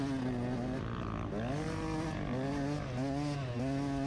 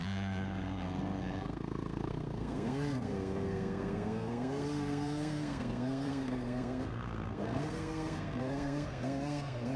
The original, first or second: first